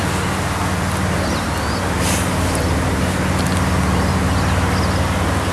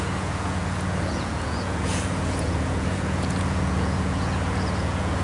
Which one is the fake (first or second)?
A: second